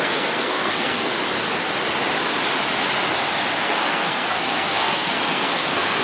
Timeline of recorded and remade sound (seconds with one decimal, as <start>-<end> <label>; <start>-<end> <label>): 0.0-1.1 remade; 1.1-3.6 recorded; 3.6-6.0 remade